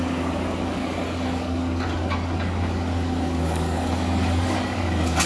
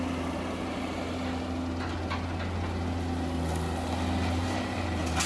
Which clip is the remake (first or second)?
first